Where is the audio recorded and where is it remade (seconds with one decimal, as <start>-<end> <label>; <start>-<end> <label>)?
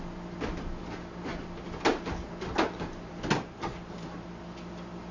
0.0-5.1 recorded